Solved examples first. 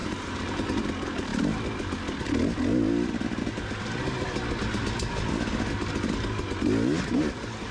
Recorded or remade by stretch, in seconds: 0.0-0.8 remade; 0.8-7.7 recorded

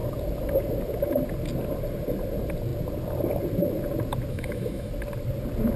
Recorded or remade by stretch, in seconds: 0.0-4.3 recorded; 4.3-4.9 remade; 4.9-5.8 recorded

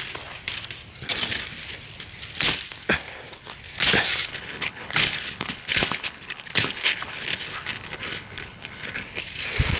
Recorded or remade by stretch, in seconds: 0.0-4.3 recorded; 4.3-9.2 remade; 9.2-9.8 recorded

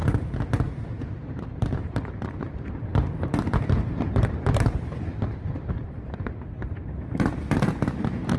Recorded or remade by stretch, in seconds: 0.0-1.3 recorded; 1.3-8.4 remade

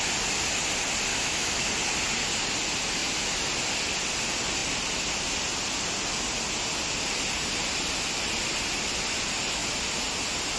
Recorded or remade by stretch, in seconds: 0.0-1.1 recorded; 1.1-1.7 remade; 1.7-10.6 recorded

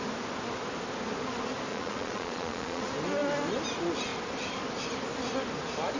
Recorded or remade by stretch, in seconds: 0.0-1.7 recorded; 1.7-2.9 remade; 2.9-6.0 recorded